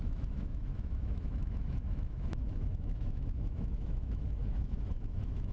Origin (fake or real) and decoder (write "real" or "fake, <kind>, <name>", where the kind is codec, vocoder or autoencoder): fake, autoencoder, DAC-VAE